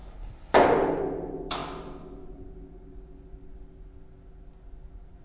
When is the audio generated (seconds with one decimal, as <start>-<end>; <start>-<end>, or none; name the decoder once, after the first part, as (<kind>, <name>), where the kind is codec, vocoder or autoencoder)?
none